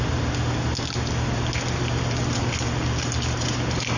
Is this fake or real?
real